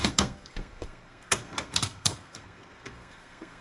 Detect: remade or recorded remade